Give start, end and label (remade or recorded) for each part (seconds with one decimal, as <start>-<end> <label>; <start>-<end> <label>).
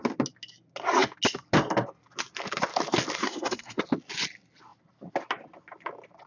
0.0-3.2 recorded; 3.2-3.8 remade; 3.8-6.3 recorded